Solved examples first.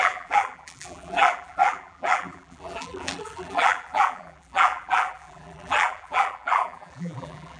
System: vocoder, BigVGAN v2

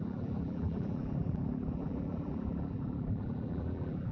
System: vocoder, BigVGAN v2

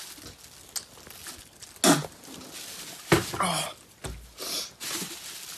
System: none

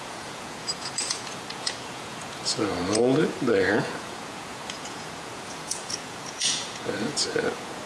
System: vocoder, Vocos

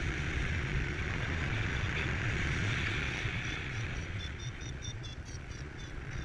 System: vocoder, Vocos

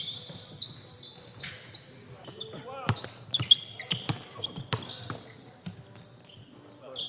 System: none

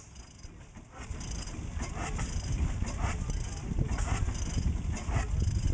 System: none